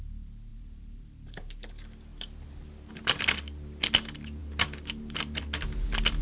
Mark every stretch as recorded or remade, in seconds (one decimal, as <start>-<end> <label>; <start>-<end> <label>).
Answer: 0.0-0.5 recorded; 0.5-1.7 remade; 1.7-2.1 recorded; 2.1-2.9 remade; 2.9-4.4 recorded; 4.4-5.4 remade; 5.4-6.2 recorded